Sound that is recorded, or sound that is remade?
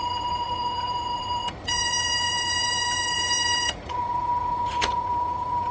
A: remade